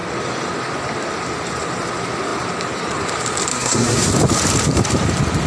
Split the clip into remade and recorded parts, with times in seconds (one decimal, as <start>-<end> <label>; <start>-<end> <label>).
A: 0.0-3.5 recorded; 3.5-4.1 remade; 4.1-5.5 recorded